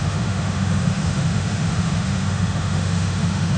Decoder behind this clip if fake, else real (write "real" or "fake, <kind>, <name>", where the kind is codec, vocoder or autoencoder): fake, autoencoder, DAC-VAE